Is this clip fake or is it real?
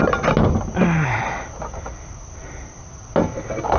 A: real